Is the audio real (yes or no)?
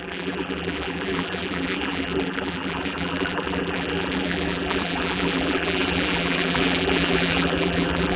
no